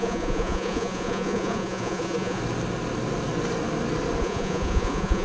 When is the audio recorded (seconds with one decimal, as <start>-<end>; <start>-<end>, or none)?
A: 2.4-4.2